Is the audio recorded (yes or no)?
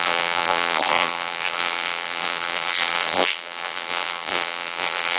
no